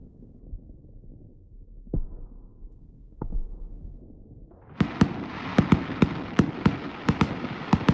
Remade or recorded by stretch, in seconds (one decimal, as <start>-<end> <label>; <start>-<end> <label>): 0.0-1.3 recorded; 1.3-3.7 remade; 3.7-7.9 recorded